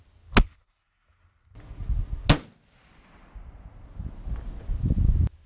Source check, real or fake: real